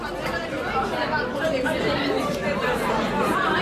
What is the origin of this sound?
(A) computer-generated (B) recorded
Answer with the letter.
B